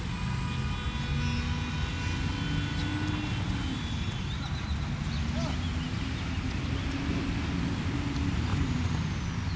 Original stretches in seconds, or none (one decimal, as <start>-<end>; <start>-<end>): 0.0-8.5